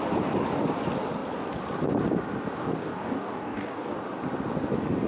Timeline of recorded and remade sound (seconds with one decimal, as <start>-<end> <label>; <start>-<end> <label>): 0.0-2.6 recorded; 2.6-4.0 remade; 4.0-5.1 recorded